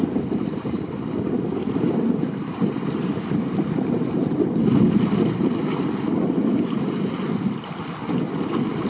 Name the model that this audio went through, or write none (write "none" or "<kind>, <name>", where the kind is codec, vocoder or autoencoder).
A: none